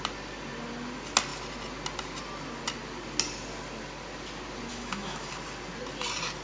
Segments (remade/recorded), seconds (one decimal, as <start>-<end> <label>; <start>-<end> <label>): 0.0-4.7 recorded; 4.7-5.3 remade; 5.3-6.4 recorded

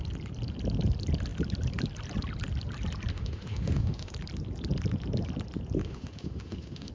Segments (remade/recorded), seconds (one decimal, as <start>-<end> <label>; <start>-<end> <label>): 0.0-3.1 recorded; 3.1-4.1 remade; 4.1-5.8 recorded; 5.8-6.9 remade

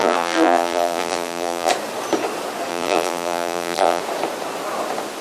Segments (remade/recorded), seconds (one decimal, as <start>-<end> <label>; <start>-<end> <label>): 0.0-1.7 remade; 1.7-2.7 recorded; 2.7-4.0 remade; 4.0-5.2 recorded